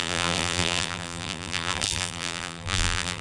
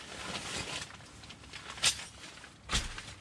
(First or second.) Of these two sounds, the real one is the second